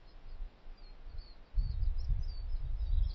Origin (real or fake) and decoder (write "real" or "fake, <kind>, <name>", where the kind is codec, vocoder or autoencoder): real